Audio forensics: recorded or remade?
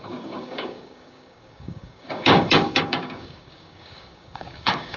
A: remade